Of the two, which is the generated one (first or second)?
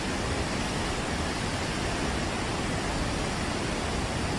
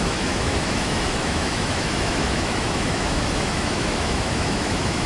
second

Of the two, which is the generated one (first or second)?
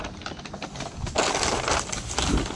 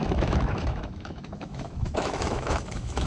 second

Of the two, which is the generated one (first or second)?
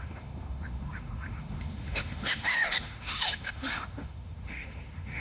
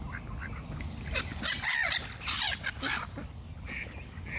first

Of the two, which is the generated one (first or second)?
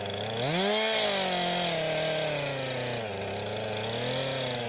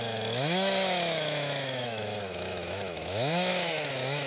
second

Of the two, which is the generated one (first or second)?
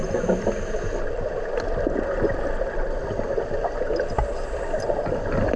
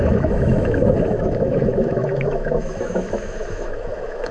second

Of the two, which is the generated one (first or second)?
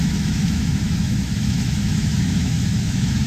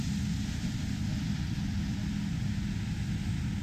first